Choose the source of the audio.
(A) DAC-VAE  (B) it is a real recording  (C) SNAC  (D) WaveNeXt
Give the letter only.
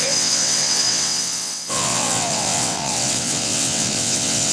D